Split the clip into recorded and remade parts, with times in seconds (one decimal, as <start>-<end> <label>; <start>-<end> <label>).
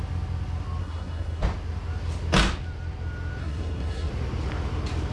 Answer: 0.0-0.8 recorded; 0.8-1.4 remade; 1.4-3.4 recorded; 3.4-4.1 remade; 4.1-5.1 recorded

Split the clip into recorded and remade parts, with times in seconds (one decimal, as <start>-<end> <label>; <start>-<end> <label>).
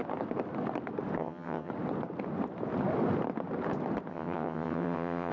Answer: 0.0-1.2 recorded; 1.2-1.7 remade; 1.7-4.1 recorded; 4.1-5.3 remade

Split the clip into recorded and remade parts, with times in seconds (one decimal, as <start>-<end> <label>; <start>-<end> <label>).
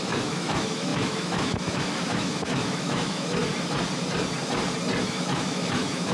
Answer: 0.0-3.4 remade; 3.4-5.0 recorded; 5.0-6.1 remade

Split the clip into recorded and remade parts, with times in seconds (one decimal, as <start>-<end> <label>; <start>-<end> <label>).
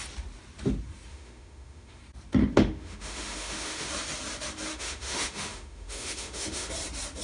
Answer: 0.0-1.1 recorded; 1.1-2.0 remade; 2.0-2.4 recorded; 2.4-3.9 remade; 3.9-4.7 recorded; 4.7-6.7 remade; 6.7-7.2 recorded